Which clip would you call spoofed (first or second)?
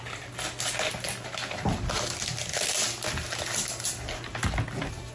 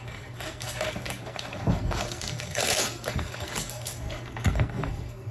second